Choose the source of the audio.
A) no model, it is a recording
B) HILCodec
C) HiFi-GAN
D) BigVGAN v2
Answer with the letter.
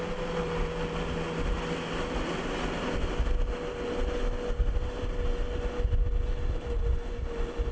A